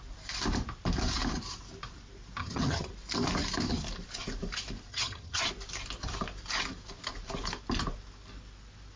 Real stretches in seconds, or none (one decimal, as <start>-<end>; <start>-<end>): 0.0-2.4; 2.9-4.9; 5.5-9.0